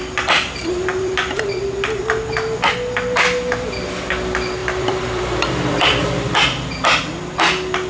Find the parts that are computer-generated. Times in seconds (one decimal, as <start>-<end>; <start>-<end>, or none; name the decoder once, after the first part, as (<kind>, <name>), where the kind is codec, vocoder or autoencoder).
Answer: 0.0-1.5 (vocoder, BigVGAN v2); 4.6-6.7